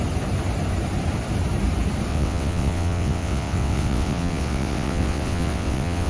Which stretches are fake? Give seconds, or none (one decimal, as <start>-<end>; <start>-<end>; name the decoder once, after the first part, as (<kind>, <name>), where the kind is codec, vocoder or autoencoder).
2.1-6.1 (vocoder, WaveNeXt)